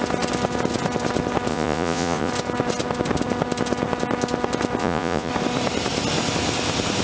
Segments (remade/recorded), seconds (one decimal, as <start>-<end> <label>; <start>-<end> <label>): 0.0-1.5 recorded; 1.5-2.3 remade; 2.3-4.8 recorded; 4.8-5.3 remade; 5.3-7.0 recorded